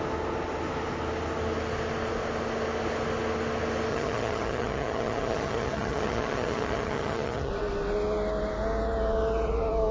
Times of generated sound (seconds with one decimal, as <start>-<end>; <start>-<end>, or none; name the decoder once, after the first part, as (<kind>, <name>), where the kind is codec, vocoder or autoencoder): 3.9-7.5 (vocoder, HiFi-GAN)